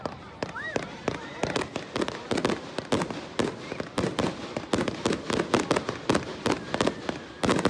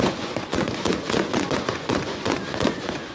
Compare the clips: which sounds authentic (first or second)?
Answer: first